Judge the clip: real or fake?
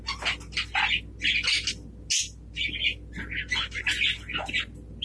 real